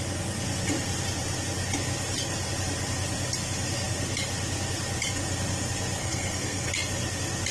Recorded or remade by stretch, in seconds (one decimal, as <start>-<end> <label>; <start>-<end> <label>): 0.0-6.0 recorded; 6.0-6.7 remade; 6.7-7.5 recorded